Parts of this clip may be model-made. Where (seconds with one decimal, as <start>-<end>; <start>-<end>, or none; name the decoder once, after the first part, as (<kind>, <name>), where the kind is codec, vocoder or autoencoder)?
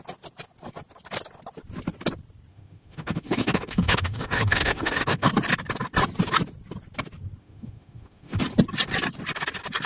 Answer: 2.5-5.3 (autoencoder, DAC-VAE); 7.4-8.4